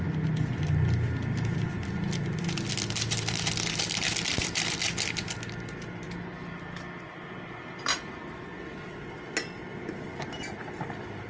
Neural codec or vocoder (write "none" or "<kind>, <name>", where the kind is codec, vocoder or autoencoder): none